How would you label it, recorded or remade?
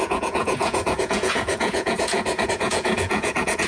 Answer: remade